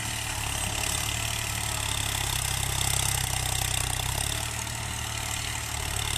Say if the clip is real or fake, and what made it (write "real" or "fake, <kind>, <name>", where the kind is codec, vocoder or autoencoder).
real